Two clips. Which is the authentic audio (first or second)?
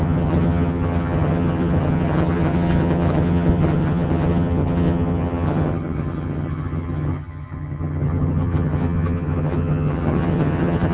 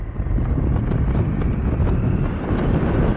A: second